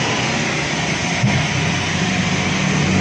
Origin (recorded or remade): recorded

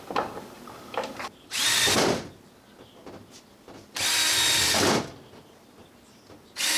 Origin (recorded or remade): recorded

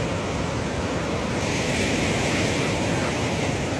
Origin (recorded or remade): recorded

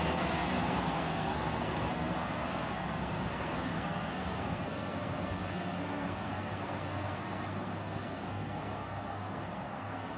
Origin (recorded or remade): remade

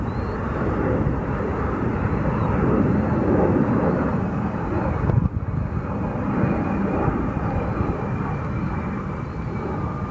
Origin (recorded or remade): recorded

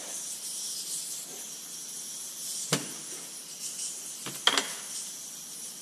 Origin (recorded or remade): recorded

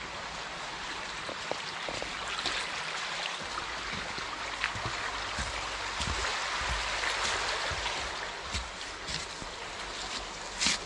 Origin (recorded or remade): recorded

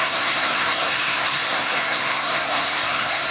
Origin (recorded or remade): remade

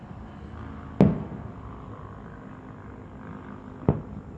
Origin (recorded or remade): recorded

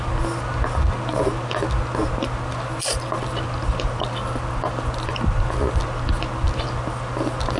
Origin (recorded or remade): recorded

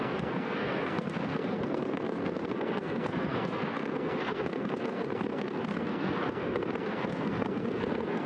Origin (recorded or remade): remade